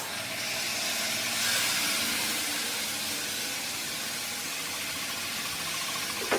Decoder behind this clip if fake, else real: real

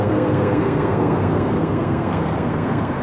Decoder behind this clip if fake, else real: fake, codec, SNAC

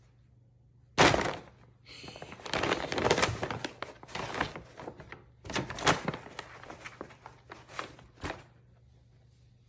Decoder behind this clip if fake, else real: real